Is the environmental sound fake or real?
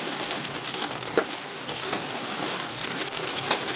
fake